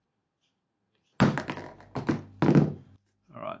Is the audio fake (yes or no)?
no